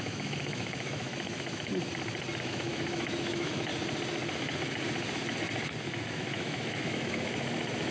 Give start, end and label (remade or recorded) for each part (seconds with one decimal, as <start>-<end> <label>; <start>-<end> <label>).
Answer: 0.0-1.7 remade; 1.7-2.4 recorded; 2.4-3.7 remade; 3.7-5.8 recorded; 5.8-7.9 remade